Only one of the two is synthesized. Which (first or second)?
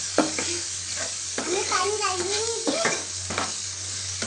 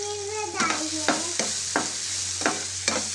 first